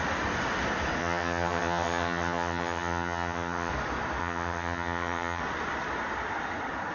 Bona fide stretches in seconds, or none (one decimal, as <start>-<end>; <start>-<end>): 0.0-1.0; 3.7-4.2; 5.4-6.9